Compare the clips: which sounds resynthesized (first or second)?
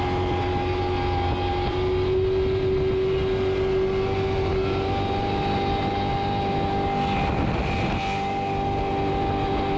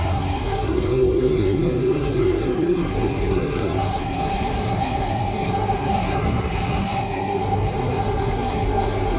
second